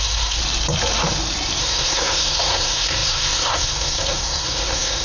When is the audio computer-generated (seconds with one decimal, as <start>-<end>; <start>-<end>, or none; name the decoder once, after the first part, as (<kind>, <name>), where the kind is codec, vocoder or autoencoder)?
0.0-0.4 (codec, SNAC); 1.6-5.0